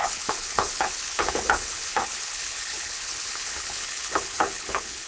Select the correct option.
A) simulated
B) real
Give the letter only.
A